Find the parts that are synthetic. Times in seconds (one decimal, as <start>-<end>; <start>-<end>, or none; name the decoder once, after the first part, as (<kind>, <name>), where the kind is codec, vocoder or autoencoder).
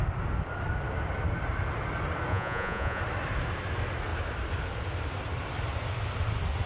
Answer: 2.3-3.0 (vocoder, Vocos)